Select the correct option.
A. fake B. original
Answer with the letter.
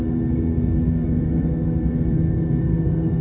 A